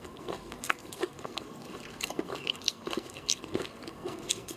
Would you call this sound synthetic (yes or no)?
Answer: yes